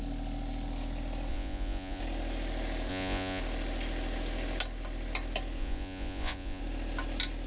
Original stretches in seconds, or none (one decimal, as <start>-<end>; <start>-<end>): 0.0-1.3; 2.0-2.9; 3.4-5.6; 6.6-7.5